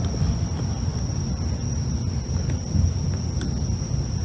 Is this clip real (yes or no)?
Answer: yes